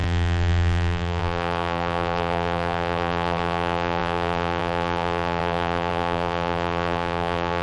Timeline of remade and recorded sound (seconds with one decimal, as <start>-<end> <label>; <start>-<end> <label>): 0.0-7.6 remade